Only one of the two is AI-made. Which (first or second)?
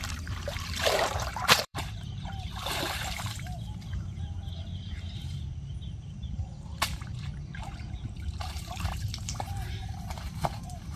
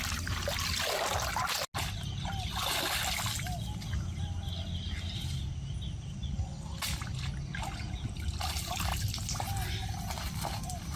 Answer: first